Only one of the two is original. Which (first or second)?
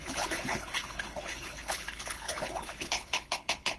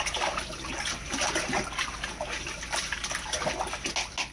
second